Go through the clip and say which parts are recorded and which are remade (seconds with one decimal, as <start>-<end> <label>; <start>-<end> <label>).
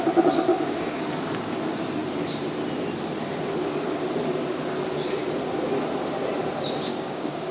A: 0.0-0.5 recorded; 0.5-1.1 remade; 1.1-6.9 recorded; 6.9-7.5 remade